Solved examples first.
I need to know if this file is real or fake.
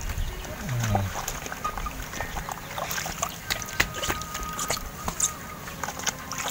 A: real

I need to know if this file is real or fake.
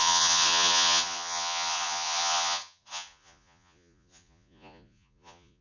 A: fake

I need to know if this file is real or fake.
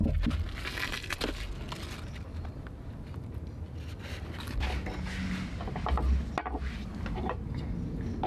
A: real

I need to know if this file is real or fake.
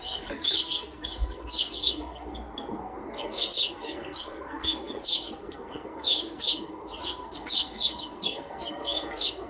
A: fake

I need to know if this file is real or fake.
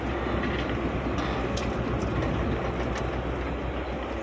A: real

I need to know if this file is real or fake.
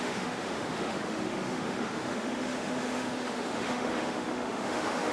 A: fake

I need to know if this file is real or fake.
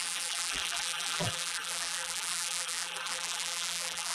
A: fake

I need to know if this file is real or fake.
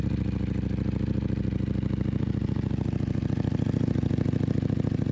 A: real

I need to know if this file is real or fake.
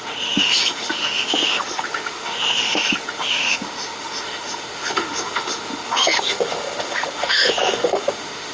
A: fake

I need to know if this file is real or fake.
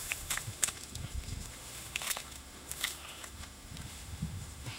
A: fake